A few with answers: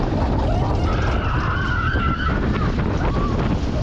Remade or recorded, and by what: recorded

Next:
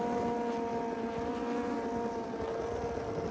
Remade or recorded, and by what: recorded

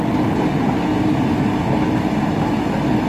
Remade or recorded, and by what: recorded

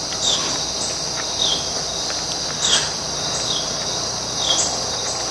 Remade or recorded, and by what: recorded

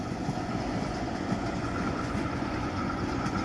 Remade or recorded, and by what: remade, vocoder, Vocos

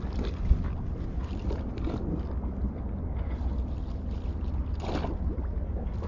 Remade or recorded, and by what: recorded